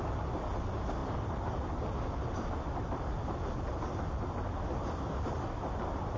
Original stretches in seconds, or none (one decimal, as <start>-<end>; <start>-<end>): 0.0-6.2